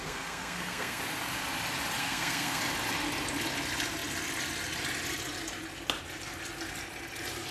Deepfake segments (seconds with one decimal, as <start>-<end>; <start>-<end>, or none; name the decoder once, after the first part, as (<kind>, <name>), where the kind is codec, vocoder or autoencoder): 0.0-1.0 (codec, SNAC); 2.0-2.6